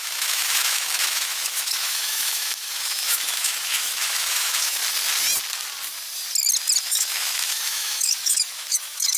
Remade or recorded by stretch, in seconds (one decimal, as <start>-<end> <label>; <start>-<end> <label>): 0.0-4.8 remade; 4.8-6.8 recorded; 6.8-9.2 remade